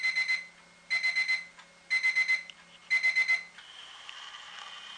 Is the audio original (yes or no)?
yes